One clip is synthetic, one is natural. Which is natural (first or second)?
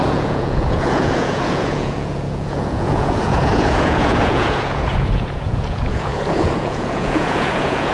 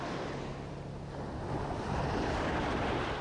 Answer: second